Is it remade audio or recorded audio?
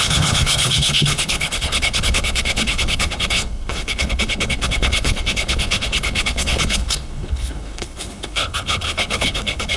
remade